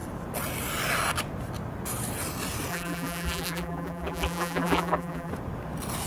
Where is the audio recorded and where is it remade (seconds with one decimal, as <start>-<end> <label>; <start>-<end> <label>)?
0.0-2.7 recorded; 2.7-5.3 remade; 5.3-6.1 recorded